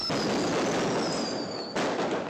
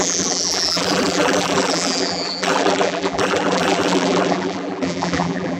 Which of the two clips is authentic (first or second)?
first